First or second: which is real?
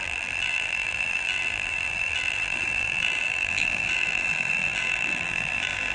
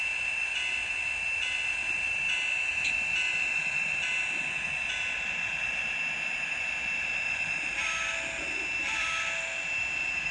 second